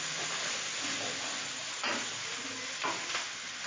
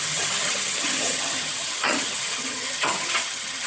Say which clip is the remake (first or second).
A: second